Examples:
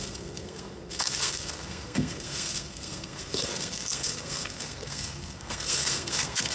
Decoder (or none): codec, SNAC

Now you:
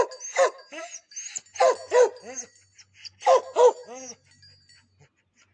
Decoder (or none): none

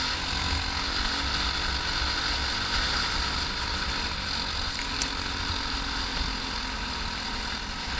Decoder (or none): none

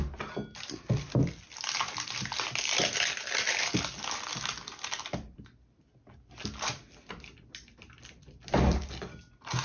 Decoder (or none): none